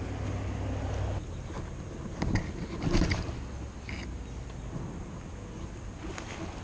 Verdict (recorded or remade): recorded